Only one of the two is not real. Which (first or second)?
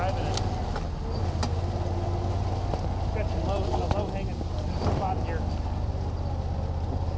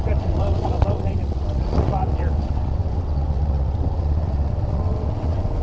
second